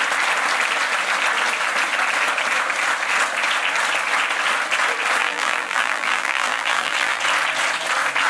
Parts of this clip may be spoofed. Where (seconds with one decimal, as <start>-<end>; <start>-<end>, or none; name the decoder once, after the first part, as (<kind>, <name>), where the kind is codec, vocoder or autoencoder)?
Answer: 5.2-7.2 (vocoder, BigVGAN v2)